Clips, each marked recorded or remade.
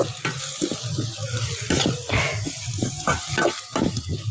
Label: recorded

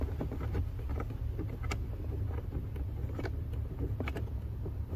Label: recorded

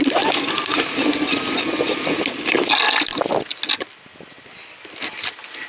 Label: recorded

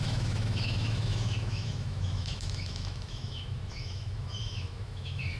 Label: remade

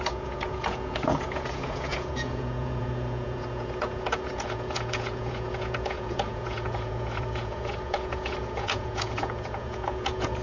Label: remade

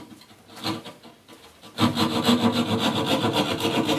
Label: recorded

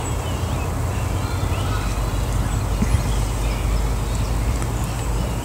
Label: recorded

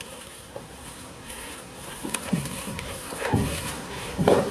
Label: remade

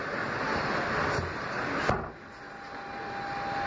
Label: recorded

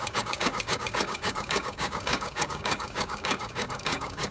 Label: remade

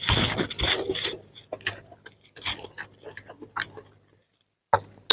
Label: recorded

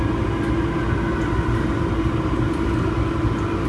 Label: recorded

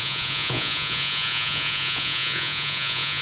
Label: remade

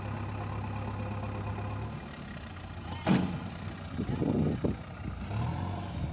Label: recorded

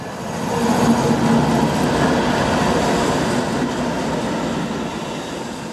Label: recorded